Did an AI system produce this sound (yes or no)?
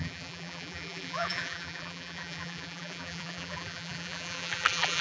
yes